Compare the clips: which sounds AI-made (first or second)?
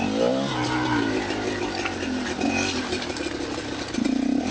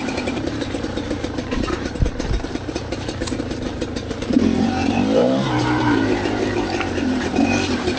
second